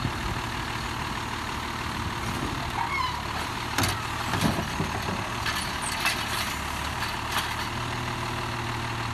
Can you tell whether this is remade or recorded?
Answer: recorded